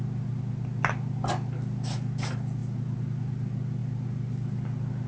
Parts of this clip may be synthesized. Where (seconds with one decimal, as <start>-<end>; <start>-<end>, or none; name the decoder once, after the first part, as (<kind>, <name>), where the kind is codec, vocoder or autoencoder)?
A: none